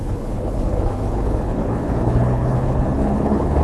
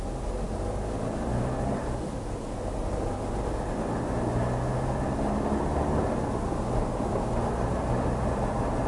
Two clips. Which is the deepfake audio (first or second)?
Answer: first